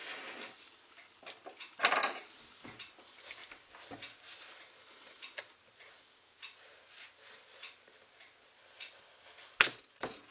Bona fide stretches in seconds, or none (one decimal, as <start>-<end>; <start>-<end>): 0.8-10.3